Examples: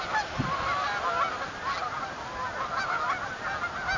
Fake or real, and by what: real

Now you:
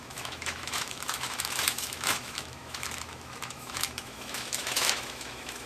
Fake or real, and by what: fake, autoencoder, DAC-VAE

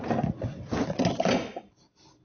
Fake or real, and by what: real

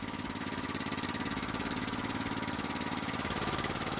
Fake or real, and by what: fake, autoencoder, DAC-VAE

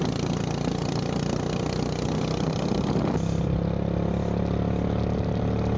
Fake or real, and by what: real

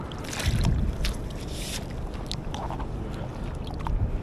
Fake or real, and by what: real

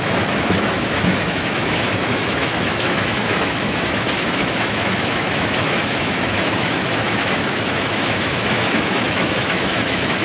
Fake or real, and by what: fake, autoencoder, DAC-VAE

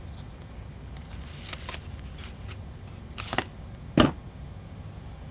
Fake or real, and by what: real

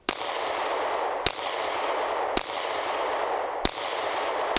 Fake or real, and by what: real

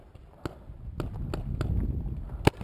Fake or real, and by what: real